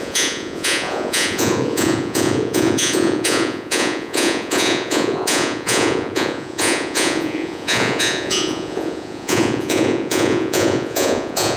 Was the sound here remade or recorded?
remade